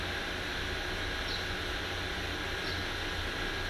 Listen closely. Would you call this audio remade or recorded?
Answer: recorded